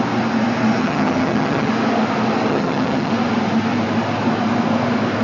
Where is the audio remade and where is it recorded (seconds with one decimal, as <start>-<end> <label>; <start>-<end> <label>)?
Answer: 0.0-0.8 recorded; 0.8-1.7 remade; 1.7-2.5 recorded; 2.5-3.1 remade; 3.1-5.2 recorded